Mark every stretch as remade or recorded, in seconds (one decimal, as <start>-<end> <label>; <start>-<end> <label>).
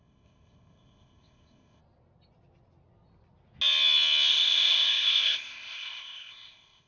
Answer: 0.0-1.8 remade; 1.8-4.3 recorded; 4.3-6.9 remade